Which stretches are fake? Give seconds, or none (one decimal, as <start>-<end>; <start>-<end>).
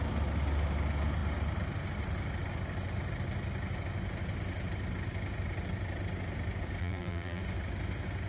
6.8-7.4